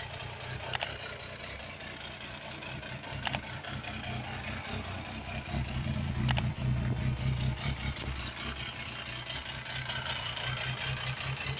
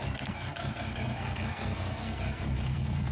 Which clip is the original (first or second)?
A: first